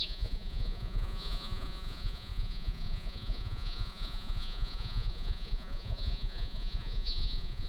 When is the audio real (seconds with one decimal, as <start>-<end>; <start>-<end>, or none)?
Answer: none